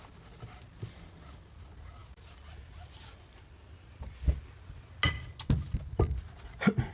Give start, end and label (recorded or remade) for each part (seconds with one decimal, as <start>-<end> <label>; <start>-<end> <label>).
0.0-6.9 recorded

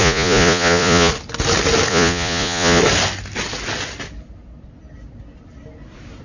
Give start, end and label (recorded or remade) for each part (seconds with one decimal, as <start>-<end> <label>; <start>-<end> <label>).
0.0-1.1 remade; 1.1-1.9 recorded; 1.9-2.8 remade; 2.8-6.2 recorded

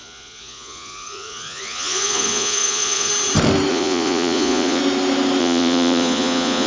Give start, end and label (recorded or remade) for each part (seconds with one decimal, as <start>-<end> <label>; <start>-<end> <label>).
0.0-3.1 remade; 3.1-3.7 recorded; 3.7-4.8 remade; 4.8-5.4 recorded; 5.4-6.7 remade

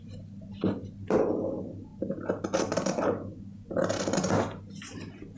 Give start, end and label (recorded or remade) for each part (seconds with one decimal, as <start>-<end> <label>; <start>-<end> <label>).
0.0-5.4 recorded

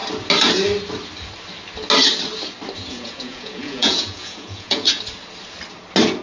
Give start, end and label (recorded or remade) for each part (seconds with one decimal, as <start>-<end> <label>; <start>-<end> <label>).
0.0-2.9 recorded; 2.9-5.0 remade; 5.0-6.2 recorded